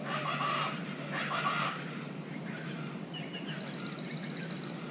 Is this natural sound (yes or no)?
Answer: yes